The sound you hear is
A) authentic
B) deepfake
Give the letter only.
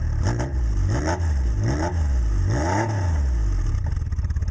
A